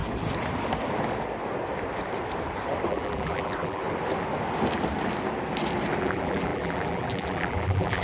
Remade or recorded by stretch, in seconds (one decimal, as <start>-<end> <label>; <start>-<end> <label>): 0.0-2.9 recorded; 2.9-3.8 remade; 3.8-6.0 recorded; 6.0-8.0 remade